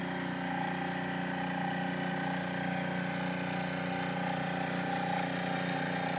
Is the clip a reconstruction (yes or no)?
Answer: no